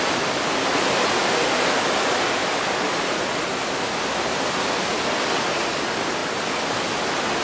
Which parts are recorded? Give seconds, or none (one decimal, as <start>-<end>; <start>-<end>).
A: 0.0-7.4